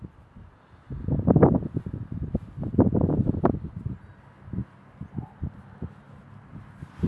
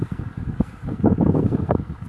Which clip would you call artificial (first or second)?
second